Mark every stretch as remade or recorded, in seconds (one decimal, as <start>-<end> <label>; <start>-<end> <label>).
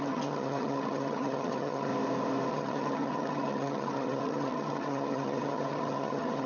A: 0.0-1.9 remade; 1.9-2.5 recorded; 2.5-6.5 remade